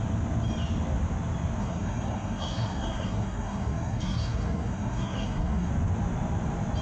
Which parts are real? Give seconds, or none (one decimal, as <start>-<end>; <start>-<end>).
0.0-1.6; 5.7-6.8